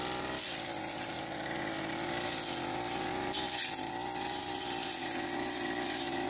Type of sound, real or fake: real